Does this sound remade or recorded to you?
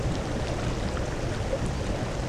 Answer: recorded